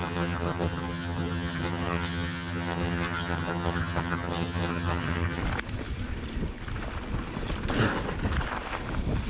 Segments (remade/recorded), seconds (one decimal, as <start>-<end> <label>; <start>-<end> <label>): 0.0-5.4 remade; 5.4-9.3 recorded